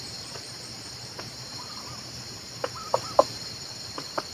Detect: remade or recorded remade